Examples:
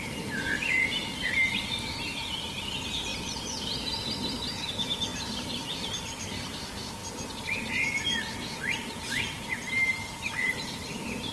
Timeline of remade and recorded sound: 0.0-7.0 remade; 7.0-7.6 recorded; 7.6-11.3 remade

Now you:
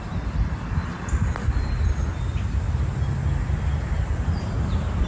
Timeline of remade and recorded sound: 0.0-5.1 recorded

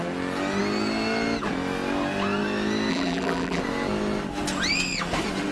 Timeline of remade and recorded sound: 0.0-2.9 recorded; 2.9-3.6 remade; 3.6-5.5 recorded